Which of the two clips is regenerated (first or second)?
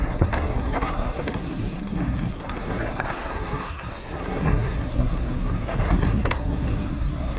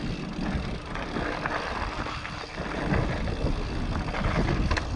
first